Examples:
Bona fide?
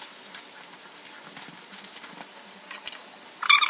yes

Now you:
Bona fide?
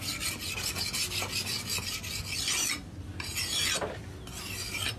yes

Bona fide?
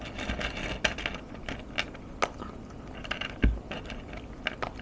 yes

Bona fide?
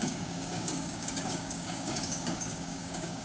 no